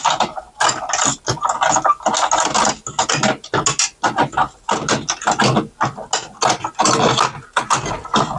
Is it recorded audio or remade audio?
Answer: recorded